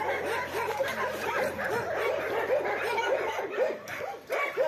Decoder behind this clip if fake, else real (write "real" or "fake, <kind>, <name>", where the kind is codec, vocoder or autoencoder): real